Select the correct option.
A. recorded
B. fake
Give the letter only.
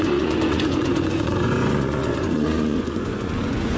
B